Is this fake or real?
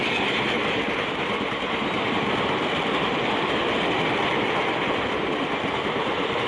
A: real